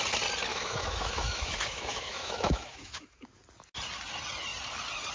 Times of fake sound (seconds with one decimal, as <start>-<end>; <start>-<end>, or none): 0.5-3.4